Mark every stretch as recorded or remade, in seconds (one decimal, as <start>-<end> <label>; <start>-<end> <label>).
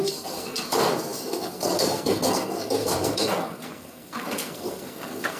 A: 0.0-5.4 remade